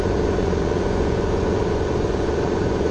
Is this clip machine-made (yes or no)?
yes